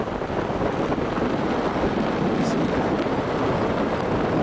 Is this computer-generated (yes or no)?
no